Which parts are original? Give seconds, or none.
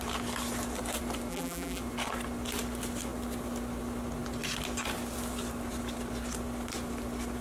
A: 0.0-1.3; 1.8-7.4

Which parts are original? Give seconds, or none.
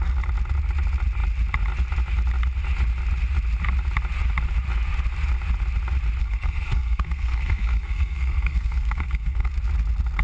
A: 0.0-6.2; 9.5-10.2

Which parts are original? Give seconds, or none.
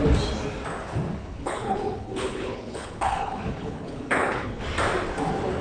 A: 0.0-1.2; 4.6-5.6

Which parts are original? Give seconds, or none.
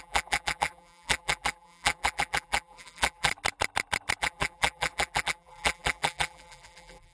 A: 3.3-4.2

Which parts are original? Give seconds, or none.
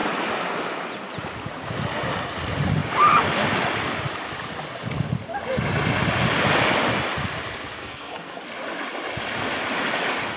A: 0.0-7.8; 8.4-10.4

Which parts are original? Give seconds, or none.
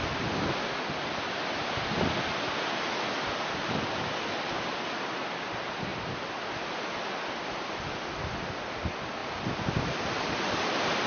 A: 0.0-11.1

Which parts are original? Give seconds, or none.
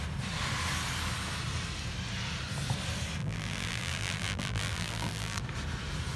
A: 0.0-3.2; 5.4-6.2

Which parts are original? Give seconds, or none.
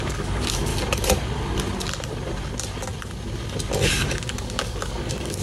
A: 0.7-3.9